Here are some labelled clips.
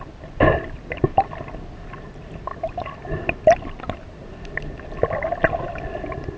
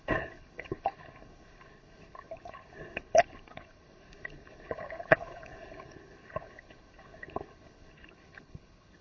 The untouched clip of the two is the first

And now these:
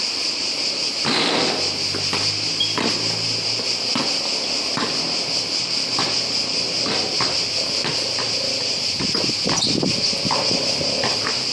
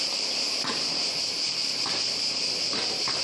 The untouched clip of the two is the first